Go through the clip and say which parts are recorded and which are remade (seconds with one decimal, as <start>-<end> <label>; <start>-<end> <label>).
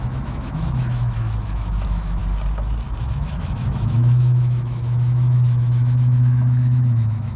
0.0-2.2 remade; 2.2-3.0 recorded; 3.0-7.4 remade